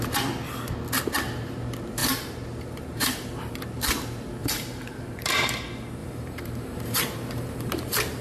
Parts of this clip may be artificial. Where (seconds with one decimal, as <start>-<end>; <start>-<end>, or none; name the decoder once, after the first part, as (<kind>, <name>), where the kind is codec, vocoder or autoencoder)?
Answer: 2.0-3.5 (vocoder, BigVGAN v2); 4.4-5.5; 6.0-8.2